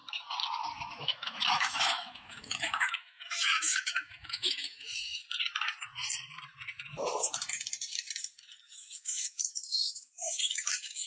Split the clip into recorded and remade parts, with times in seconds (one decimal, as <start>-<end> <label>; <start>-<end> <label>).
0.0-1.0 recorded; 1.0-5.2 remade; 5.2-8.6 recorded; 8.6-11.1 remade